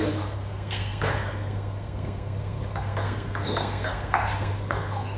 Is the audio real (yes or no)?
no